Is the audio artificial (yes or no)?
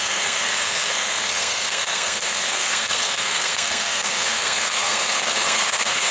yes